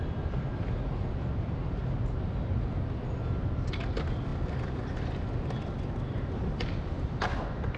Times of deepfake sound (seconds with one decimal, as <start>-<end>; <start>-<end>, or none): none